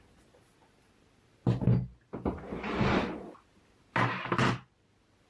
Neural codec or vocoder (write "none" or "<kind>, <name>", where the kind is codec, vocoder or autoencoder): none